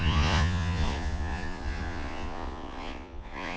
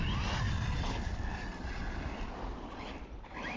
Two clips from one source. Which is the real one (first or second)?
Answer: second